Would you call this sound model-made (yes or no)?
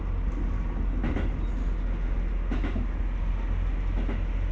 no